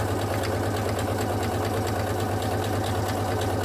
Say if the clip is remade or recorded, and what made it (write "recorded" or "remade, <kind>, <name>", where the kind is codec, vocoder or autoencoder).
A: recorded